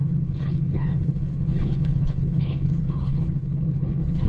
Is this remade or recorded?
remade